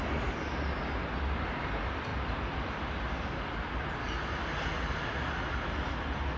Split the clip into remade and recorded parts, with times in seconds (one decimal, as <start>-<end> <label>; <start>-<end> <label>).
0.0-6.4 recorded